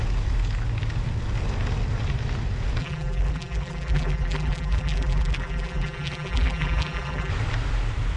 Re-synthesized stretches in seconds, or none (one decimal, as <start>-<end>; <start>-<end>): 2.8-7.3